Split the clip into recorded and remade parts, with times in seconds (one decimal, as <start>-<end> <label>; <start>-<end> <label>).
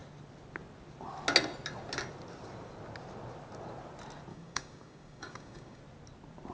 0.0-4.3 recorded; 4.3-5.8 remade; 5.8-6.5 recorded